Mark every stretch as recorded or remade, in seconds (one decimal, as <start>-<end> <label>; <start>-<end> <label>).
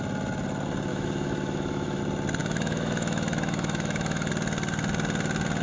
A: 0.0-0.9 recorded; 0.9-2.0 remade; 2.0-2.4 recorded; 2.4-4.3 remade; 4.3-5.6 recorded